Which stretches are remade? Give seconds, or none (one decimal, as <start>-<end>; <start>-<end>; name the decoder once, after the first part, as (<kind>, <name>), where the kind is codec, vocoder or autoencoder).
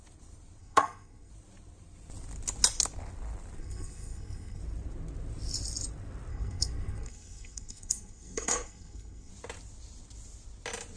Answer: 0.6-1.3 (codec, SNAC); 3.6-4.6; 6.3-9.3